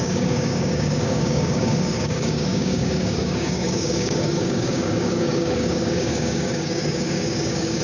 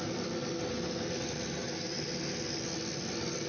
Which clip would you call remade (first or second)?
first